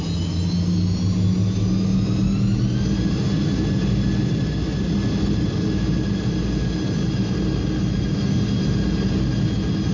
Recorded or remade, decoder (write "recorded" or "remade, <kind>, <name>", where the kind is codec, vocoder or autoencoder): recorded